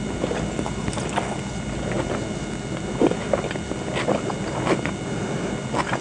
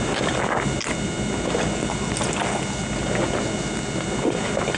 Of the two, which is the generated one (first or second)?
first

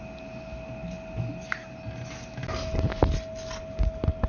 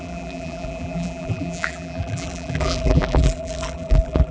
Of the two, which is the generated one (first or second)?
second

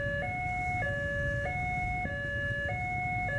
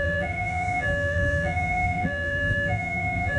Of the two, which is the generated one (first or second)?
second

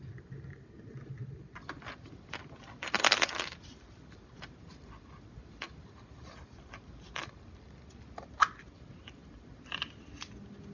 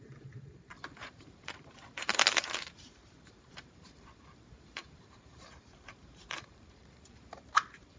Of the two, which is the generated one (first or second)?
second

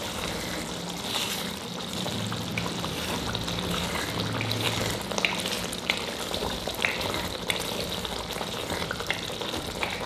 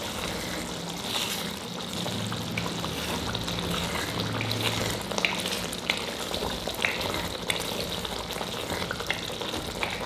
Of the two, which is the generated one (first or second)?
first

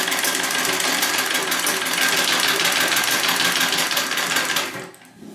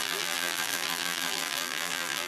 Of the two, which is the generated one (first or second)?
second